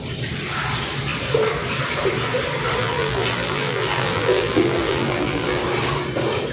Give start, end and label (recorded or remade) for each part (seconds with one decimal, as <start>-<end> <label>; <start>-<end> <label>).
0.0-2.8 recorded; 2.8-5.6 remade; 5.6-6.5 recorded

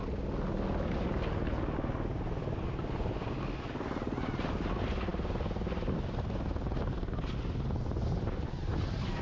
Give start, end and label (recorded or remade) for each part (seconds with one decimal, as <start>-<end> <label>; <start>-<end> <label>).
0.0-9.2 recorded

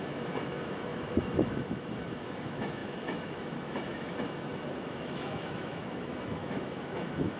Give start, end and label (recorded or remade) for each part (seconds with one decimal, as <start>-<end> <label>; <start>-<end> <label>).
0.0-7.4 remade

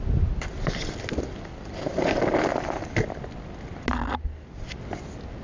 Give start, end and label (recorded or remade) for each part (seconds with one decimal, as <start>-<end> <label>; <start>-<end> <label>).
0.0-5.4 recorded

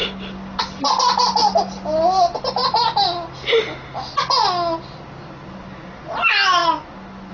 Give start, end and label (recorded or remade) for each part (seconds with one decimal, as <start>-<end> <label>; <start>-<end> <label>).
0.0-7.3 recorded

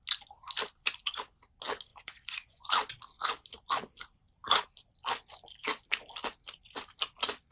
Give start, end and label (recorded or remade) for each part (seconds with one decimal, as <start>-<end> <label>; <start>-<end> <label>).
0.0-1.9 recorded; 1.9-2.6 remade; 2.6-7.5 recorded

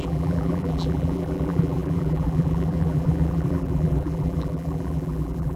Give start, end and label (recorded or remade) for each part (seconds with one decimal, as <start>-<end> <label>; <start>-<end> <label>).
0.0-5.6 remade

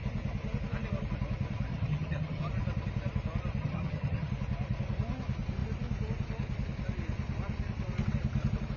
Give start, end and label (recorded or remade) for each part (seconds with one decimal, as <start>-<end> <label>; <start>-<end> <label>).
0.0-1.7 recorded; 1.7-2.5 remade; 2.5-3.6 recorded; 3.6-4.3 remade; 4.3-8.8 recorded